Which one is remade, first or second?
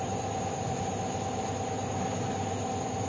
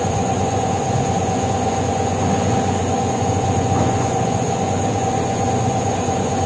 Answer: second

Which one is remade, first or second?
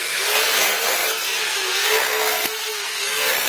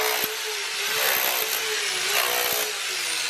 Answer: first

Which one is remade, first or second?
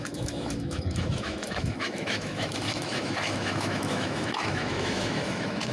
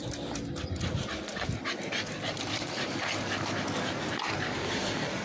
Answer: first